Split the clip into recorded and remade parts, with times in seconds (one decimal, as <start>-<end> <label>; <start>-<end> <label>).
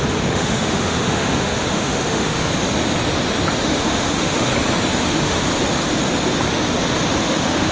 0.0-2.5 remade; 2.5-3.6 recorded; 3.6-4.5 remade; 4.5-5.0 recorded; 5.0-5.5 remade; 5.5-7.2 recorded; 7.2-7.7 remade